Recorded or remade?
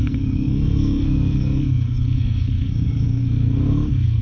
remade